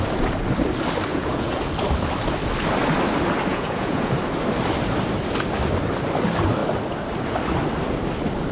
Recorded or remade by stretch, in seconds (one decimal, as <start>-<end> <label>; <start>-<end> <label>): 0.0-1.1 recorded; 1.1-1.7 remade; 1.7-3.5 recorded; 3.5-4.1 remade; 4.1-8.5 recorded